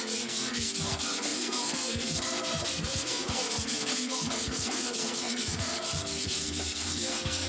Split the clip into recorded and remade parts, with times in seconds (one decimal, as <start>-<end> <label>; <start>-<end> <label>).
0.0-7.5 remade